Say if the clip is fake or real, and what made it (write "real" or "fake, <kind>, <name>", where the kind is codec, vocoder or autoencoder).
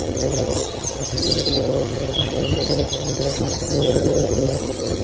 fake, vocoder, HiFi-GAN